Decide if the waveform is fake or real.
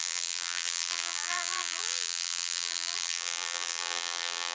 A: fake